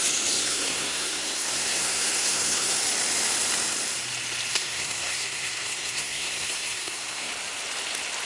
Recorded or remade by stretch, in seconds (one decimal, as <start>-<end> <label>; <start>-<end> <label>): 0.0-0.4 recorded; 0.4-2.8 remade; 2.8-4.5 recorded; 4.5-7.3 remade; 7.3-8.3 recorded